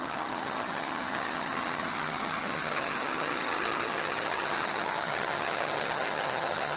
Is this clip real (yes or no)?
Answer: no